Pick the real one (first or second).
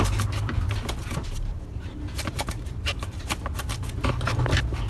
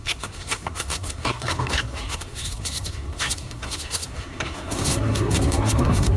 first